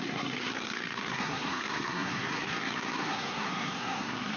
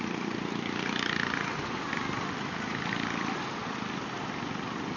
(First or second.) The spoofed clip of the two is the first